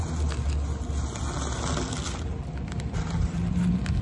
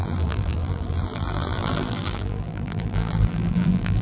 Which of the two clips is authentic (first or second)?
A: first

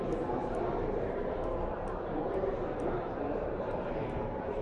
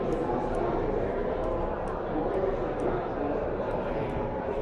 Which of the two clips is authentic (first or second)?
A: second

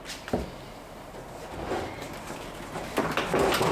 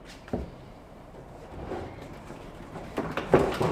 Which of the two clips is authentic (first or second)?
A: first